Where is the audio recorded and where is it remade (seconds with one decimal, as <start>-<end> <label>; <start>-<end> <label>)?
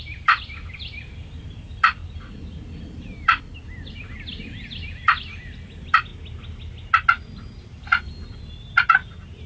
0.0-6.1 remade; 6.1-7.6 recorded; 7.6-8.2 remade; 8.2-9.5 recorded